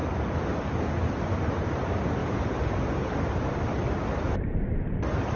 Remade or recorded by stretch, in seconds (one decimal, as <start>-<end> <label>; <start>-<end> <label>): 0.0-5.4 recorded